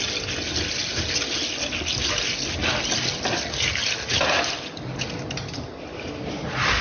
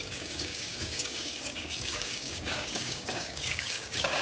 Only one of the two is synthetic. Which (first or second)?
second